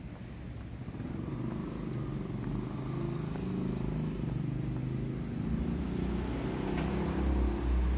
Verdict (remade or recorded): recorded